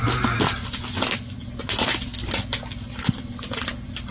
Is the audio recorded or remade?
recorded